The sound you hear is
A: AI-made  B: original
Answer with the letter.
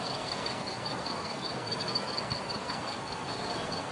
A